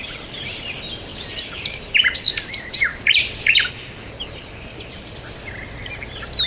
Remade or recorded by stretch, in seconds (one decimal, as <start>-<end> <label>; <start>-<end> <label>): 0.0-1.1 recorded; 1.1-1.8 remade; 1.8-2.9 recorded; 2.9-3.7 remade; 3.7-4.7 recorded; 4.7-5.9 remade; 5.9-6.5 recorded